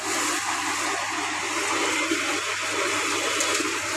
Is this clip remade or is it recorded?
recorded